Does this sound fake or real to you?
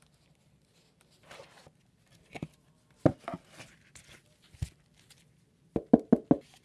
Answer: real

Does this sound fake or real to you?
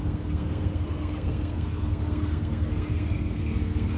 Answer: fake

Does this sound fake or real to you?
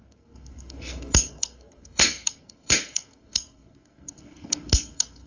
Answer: fake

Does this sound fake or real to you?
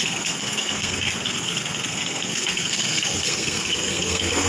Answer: fake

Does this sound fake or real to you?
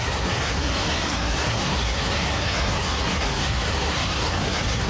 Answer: fake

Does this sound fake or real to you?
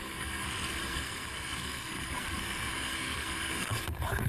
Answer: fake